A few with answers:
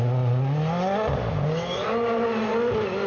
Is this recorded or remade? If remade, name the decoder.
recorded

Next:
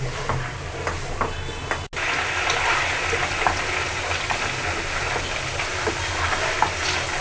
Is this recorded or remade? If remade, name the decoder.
recorded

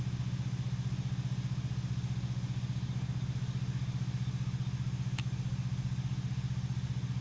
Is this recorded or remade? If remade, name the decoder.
recorded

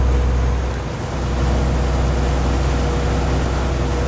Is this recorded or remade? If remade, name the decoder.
recorded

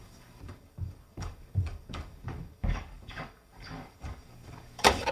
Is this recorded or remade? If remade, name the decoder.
remade, codec, DAC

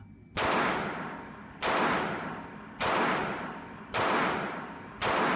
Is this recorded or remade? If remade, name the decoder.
recorded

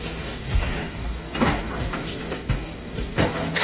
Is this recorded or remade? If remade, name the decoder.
remade, codec, DAC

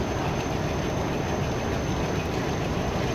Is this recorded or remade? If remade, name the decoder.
recorded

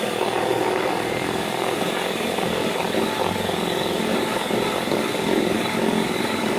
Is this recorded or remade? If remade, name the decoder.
remade, codec, DAC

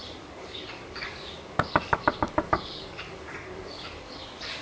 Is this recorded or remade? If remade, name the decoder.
remade, codec, DAC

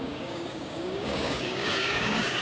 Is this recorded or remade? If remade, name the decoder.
remade, codec, DAC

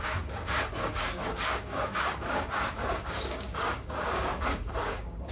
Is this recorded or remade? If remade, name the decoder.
remade, codec, DAC